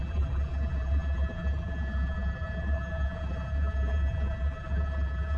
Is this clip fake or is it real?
fake